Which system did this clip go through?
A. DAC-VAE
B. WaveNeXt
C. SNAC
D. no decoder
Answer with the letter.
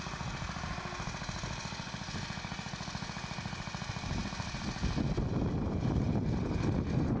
D